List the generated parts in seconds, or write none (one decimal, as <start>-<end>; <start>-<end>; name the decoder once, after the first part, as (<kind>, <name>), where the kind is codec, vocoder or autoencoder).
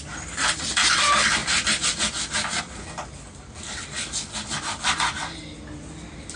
none